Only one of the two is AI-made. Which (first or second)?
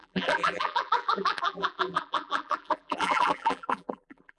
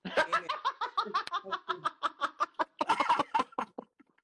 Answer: first